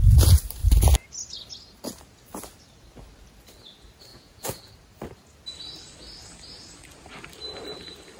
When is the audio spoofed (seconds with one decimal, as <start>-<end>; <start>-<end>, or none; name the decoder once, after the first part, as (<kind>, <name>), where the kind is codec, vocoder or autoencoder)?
4.1-4.7 (vocoder, Vocos)